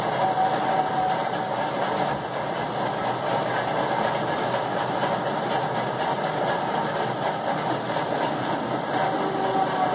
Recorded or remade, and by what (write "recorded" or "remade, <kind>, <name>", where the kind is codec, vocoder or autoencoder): recorded